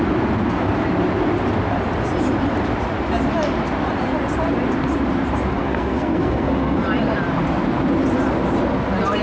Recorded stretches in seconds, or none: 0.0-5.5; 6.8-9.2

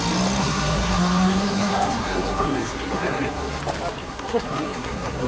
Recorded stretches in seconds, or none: 0.0-0.4; 3.6-4.0

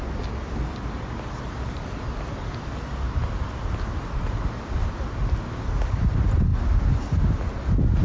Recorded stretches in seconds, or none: 0.0-8.0